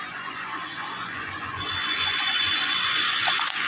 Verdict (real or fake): fake